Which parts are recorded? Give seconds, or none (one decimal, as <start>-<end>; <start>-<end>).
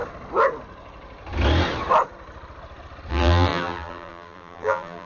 0.0-3.1